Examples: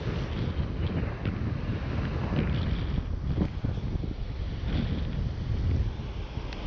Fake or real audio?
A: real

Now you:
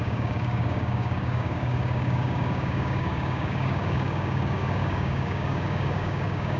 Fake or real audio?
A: fake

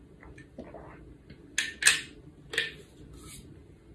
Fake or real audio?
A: real